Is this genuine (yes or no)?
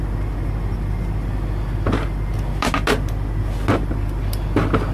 yes